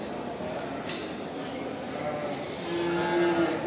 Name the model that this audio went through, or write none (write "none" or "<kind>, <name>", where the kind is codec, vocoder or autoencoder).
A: none